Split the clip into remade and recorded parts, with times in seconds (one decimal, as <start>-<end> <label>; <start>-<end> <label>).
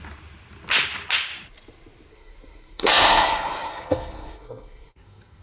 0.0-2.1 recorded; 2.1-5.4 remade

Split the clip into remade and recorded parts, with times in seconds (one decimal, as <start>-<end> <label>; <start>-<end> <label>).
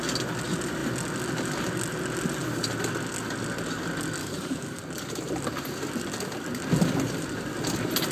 0.0-4.2 recorded; 4.2-4.8 remade; 4.8-8.1 recorded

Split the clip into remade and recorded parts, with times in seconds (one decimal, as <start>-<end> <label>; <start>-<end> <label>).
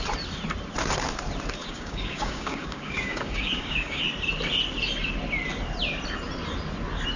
0.0-1.6 recorded; 1.6-4.0 remade; 4.0-7.2 recorded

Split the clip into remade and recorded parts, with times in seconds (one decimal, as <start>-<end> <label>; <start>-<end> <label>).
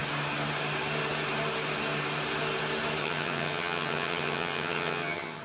0.0-3.0 recorded; 3.0-5.4 remade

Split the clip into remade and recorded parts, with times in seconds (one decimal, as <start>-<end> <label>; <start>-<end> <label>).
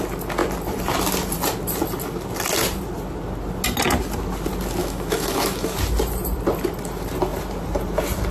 0.0-4.8 recorded; 4.8-5.8 remade; 5.8-8.3 recorded